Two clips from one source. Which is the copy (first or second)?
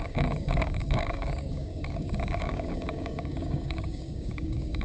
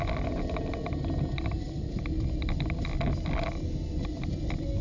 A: first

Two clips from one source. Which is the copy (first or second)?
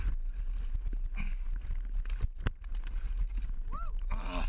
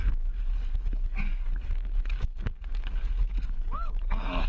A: second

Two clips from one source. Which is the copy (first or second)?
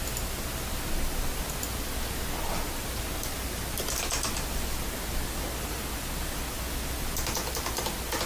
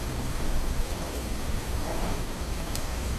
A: second